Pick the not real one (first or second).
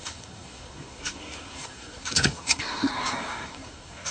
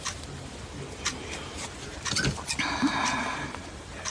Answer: first